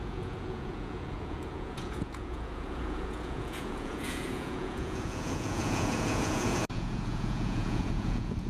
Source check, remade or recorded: remade